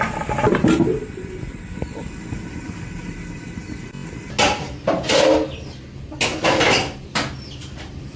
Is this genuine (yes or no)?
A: yes